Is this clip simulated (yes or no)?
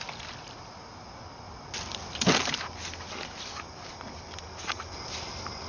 no